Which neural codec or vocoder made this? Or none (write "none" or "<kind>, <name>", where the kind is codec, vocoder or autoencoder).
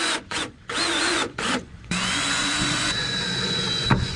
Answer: vocoder, Vocos